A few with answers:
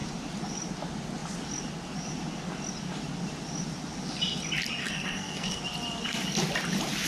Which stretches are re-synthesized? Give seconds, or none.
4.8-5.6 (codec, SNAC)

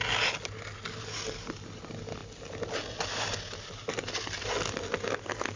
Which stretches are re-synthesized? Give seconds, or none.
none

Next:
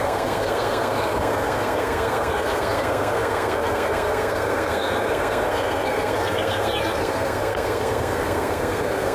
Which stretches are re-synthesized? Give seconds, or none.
0.0-9.1 (codec, SNAC)

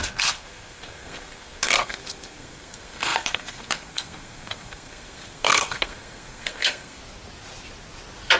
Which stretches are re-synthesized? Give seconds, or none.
0.0-7.0 (codec, SNAC)

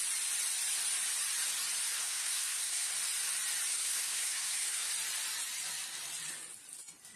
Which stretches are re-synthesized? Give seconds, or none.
1.9-2.9 (codec, SNAC); 3.7-4.9

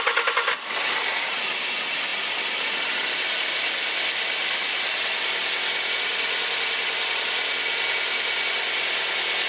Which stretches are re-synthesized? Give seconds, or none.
none

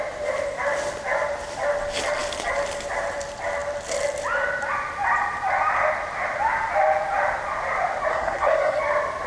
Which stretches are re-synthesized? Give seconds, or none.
8.1-8.8 (codec, SNAC)

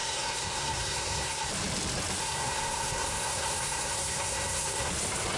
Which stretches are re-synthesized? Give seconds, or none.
0.0-1.5 (codec, SNAC); 2.2-4.9